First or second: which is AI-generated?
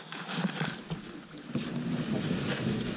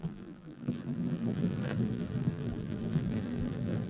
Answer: second